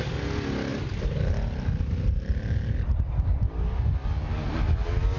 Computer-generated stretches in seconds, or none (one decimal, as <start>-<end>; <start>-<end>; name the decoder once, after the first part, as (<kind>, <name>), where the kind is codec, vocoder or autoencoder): none